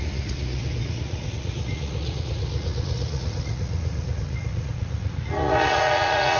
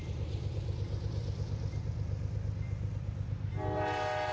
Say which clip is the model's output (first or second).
first